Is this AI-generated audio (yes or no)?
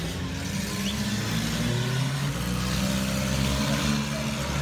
no